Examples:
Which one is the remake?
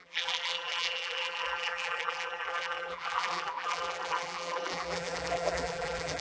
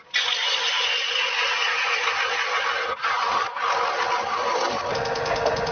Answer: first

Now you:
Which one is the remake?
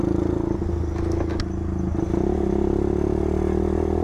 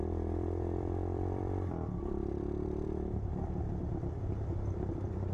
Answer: second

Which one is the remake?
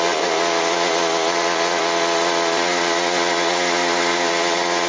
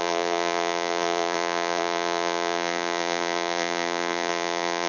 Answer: second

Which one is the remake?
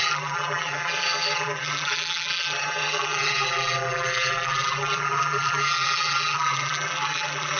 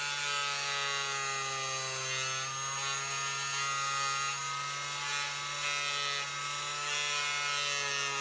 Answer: first